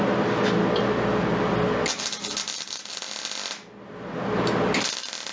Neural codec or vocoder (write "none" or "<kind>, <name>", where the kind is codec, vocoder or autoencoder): none